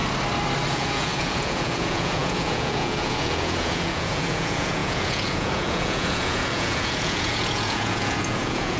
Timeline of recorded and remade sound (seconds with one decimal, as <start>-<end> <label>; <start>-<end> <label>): 0.0-0.7 recorded; 0.7-8.8 remade